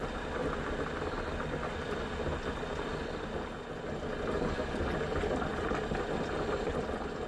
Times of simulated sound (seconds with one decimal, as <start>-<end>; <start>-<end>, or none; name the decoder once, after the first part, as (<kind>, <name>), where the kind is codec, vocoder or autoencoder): 0.4-1.0 (vocoder, BigVGAN v2)

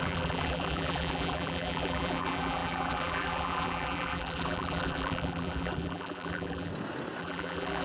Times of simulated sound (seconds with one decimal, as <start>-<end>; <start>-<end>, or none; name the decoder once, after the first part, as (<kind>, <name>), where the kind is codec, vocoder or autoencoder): 0.0-6.7 (vocoder, BigVGAN v2); 7.2-7.8

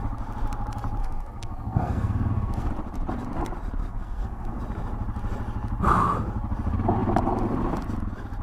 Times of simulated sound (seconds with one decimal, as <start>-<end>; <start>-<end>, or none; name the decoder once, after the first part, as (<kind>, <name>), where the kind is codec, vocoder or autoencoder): 1.0-2.7 (codec, SNAC); 3.8-4.6

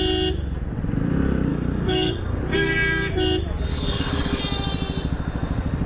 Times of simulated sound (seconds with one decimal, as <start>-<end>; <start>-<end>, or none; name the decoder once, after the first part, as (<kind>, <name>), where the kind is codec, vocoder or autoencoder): 1.5-2.4 (codec, DAC); 3.7-4.4

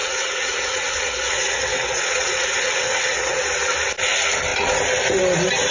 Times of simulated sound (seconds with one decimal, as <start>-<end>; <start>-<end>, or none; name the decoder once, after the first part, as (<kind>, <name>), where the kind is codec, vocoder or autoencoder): 0.0-3.4 (vocoder, WaveNeXt)

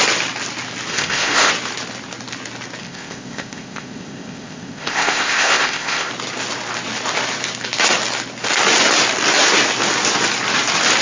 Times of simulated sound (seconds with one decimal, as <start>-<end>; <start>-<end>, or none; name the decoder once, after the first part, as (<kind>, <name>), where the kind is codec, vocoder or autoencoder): 0.9-1.5 (codec, ZipCodec); 2.8-6.1

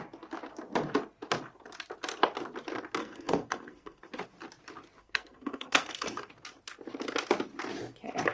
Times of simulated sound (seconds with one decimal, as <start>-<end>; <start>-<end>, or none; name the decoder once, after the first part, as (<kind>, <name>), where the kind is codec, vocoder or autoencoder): 3.0-4.1 (codec, SNAC); 5.0-6.3